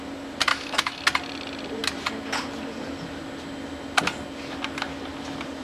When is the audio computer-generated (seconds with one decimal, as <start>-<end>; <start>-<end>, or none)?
0.5-1.0